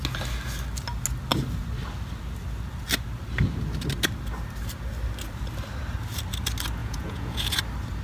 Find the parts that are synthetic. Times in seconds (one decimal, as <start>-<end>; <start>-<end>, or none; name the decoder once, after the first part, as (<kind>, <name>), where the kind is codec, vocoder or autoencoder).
6.8-7.6 (vocoder, Vocos)